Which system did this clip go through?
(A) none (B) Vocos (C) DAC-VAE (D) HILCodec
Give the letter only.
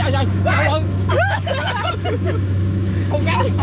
C